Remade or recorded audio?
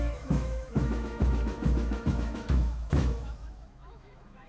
remade